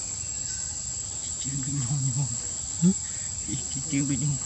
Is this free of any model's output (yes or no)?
yes